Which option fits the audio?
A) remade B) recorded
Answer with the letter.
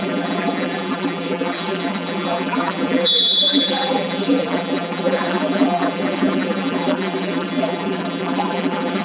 A